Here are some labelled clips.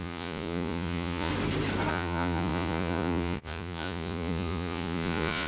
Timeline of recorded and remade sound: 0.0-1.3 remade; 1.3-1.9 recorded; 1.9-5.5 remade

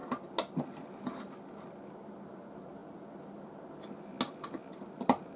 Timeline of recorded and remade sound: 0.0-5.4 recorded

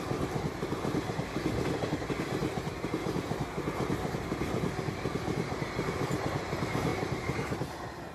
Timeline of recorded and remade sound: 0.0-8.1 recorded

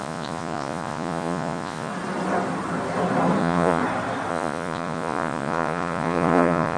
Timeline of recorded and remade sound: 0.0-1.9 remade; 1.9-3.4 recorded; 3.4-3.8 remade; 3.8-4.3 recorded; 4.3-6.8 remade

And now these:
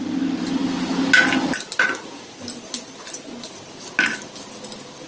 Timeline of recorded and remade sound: 0.0-5.1 recorded

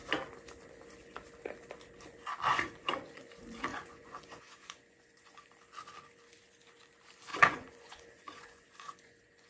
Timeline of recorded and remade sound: 0.0-2.5 recorded; 2.5-3.2 remade; 3.2-3.7 recorded; 3.7-5.5 remade; 5.5-7.3 recorded; 7.3-9.5 remade